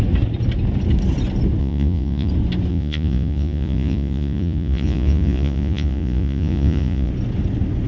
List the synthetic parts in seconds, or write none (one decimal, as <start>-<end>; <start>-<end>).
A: 1.6-2.3; 2.7-7.1